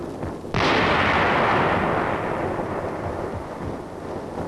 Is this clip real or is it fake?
real